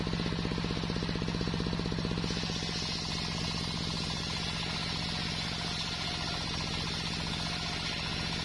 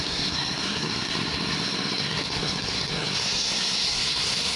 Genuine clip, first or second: first